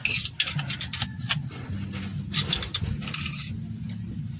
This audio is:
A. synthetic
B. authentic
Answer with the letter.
B